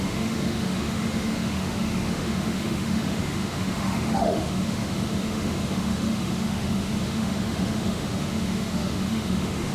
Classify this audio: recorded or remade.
remade